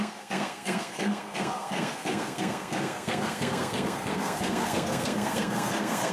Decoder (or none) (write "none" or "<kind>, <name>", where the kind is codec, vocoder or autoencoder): codec, SNAC